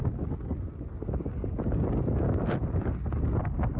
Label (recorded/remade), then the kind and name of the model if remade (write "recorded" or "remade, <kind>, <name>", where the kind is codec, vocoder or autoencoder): recorded